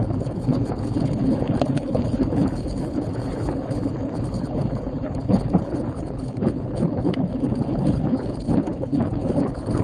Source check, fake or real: fake